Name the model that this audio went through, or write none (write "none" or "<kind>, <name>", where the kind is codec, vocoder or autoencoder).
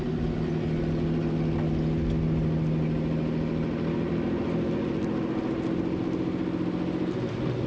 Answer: none